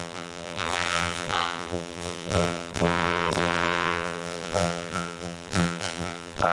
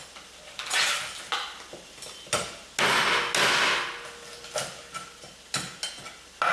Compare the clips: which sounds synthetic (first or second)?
first